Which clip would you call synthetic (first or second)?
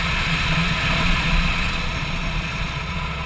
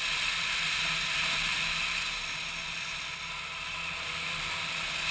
first